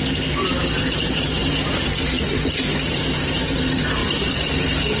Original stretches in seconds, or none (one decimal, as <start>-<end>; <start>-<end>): 0.0-0.4; 3.4-4.0; 4.5-5.0